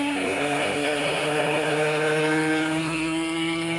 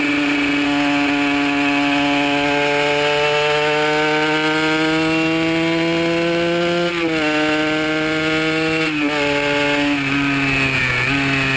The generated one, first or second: first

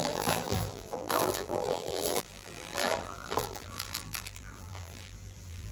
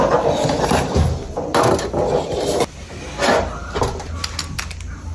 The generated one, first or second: first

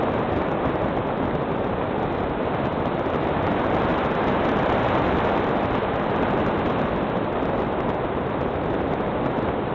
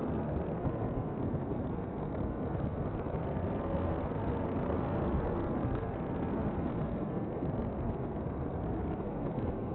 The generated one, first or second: second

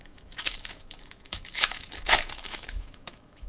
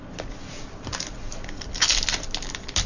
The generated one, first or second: first